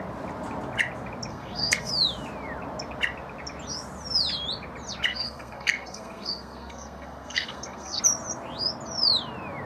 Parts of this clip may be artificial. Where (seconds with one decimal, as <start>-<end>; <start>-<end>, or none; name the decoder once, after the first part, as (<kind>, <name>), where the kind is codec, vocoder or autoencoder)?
1.3-1.9 (codec, SNAC); 5.1-8.0